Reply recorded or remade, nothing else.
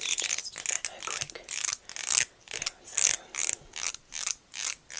recorded